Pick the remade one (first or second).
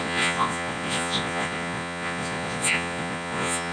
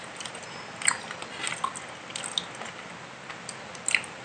first